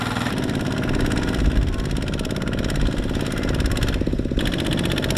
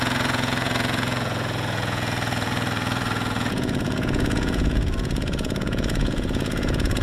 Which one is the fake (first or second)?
second